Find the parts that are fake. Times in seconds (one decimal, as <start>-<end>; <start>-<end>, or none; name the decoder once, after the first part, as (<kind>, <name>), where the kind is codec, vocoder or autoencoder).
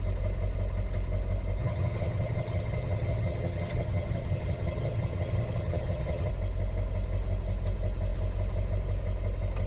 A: 1.6-6.3 (vocoder, HiFi-GAN)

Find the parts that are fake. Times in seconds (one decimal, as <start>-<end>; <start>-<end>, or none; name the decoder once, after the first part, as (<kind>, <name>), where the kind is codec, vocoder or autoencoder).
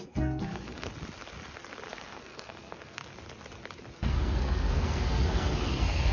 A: 0.0-0.9 (codec, SNAC); 1.9-3.0; 3.9-6.1